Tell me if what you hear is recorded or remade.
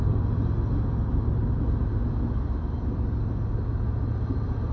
recorded